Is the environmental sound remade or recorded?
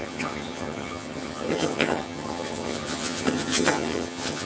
remade